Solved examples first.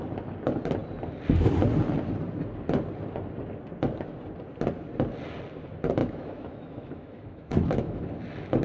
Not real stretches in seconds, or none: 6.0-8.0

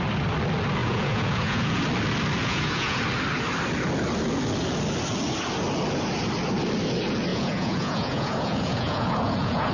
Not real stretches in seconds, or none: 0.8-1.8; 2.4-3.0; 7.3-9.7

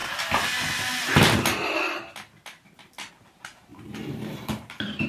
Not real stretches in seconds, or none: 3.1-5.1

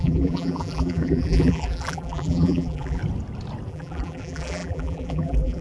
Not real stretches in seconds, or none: 0.0-3.0; 3.7-5.6

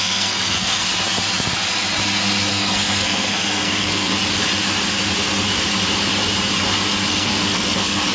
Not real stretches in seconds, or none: 0.0-0.9; 2.5-4.1; 7.1-8.1